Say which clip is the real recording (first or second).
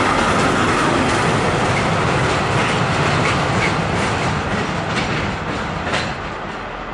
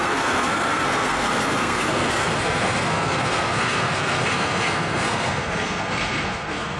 first